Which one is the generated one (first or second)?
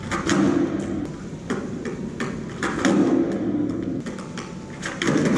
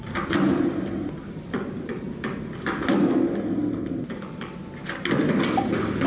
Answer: second